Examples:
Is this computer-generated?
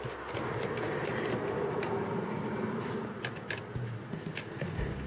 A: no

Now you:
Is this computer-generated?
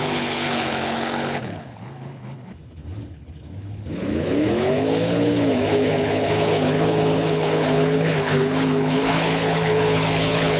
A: yes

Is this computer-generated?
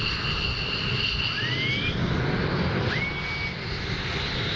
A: no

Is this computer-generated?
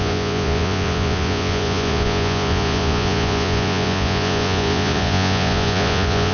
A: yes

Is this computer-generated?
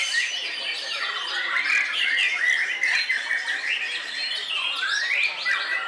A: no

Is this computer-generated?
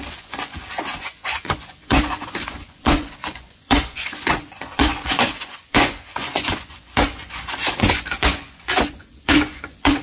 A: yes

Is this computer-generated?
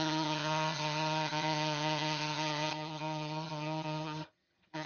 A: yes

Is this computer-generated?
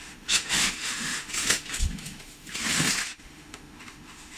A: yes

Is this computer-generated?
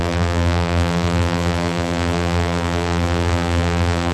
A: yes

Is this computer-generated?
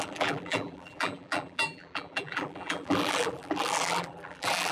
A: yes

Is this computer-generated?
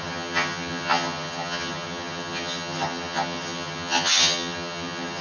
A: yes